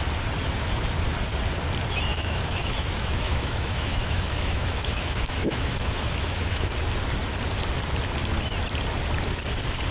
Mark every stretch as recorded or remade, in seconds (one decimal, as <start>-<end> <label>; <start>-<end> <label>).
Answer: 0.0-2.1 recorded; 2.1-6.7 remade; 6.7-9.9 recorded